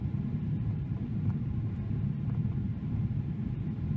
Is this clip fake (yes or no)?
yes